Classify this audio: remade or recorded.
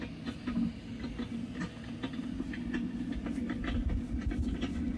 recorded